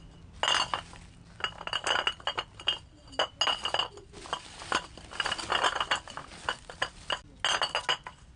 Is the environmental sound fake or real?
real